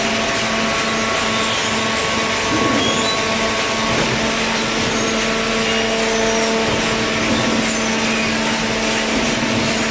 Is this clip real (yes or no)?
yes